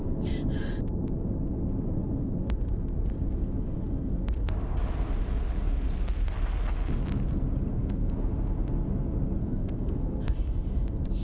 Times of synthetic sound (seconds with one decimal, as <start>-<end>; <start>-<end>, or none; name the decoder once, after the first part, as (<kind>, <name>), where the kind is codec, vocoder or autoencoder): 7.7-8.3 (codec, SNAC); 9.4-10.2